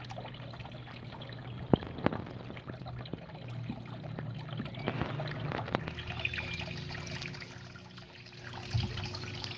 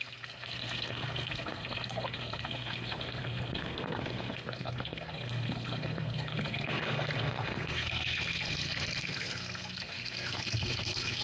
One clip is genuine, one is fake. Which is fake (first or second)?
second